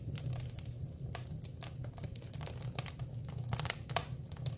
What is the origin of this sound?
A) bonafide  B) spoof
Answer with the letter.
A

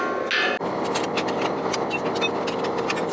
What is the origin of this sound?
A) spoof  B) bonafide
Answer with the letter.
B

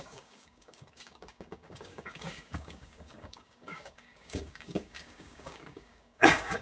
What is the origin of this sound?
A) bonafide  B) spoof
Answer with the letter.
B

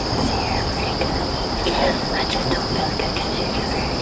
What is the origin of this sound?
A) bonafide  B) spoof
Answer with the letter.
A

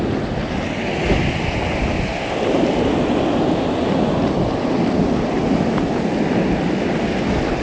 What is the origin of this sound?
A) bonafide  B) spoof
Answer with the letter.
A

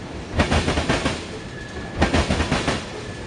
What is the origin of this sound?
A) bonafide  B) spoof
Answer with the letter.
A